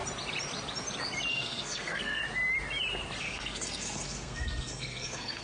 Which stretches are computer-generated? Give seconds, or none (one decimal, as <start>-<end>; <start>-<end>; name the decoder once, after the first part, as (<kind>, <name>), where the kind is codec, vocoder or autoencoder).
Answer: 1.3-2.2 (codec, SNAC); 3.2-5.4